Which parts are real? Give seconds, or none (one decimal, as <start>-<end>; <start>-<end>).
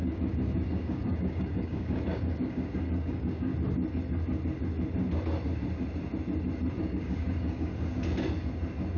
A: 3.5-6.8; 7.7-9.0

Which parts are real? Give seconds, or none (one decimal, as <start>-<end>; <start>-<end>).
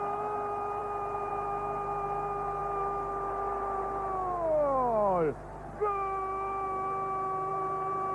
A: 0.0-8.1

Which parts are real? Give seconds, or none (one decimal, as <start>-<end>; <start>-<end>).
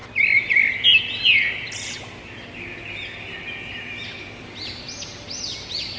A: 0.0-6.0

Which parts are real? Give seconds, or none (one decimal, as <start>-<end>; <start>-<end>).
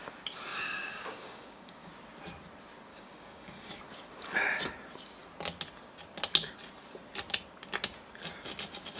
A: 0.0-0.5; 1.9-2.9; 3.8-9.0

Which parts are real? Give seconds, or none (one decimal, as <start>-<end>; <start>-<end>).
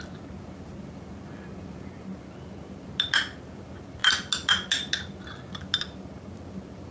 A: 0.0-6.9